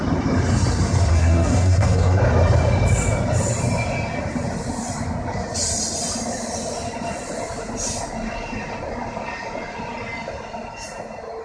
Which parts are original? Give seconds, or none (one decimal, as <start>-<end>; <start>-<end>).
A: 0.0-1.1; 2.2-11.4